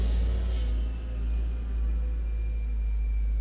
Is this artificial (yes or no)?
no